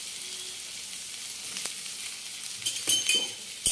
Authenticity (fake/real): real